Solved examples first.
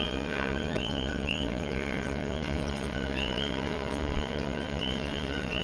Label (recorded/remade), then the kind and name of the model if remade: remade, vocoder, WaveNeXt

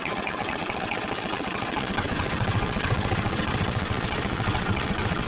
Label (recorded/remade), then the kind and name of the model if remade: remade, vocoder, WaveNeXt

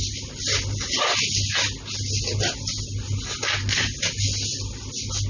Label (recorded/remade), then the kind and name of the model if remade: recorded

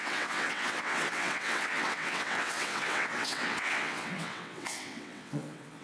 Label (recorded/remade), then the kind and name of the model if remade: remade, vocoder, WaveNeXt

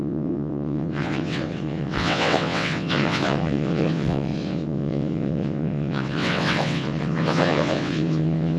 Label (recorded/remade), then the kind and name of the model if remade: remade, vocoder, WaveNeXt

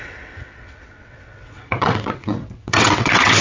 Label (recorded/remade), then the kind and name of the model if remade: remade, vocoder, WaveNeXt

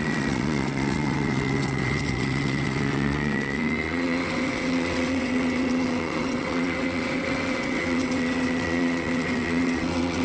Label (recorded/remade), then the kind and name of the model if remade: remade, vocoder, WaveNeXt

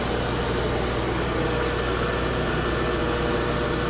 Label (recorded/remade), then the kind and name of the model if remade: recorded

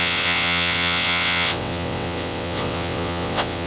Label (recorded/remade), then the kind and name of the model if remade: remade, vocoder, WaveNeXt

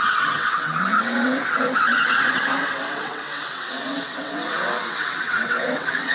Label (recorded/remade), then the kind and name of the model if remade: remade, vocoder, WaveNeXt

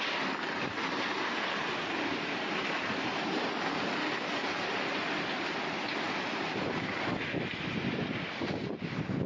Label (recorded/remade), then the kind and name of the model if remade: recorded